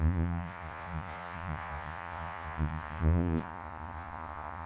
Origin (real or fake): fake